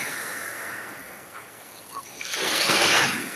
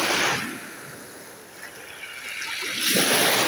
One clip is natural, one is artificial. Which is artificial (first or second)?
first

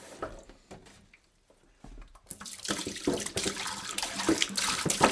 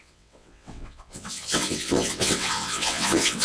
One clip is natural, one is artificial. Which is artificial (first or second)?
second